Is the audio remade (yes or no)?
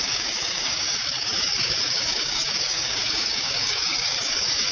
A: yes